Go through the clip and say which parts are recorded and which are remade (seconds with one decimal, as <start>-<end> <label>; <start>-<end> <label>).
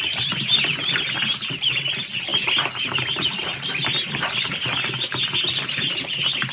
0.0-6.5 recorded